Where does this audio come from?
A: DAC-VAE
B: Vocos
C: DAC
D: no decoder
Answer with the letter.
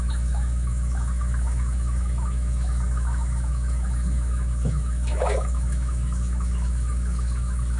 A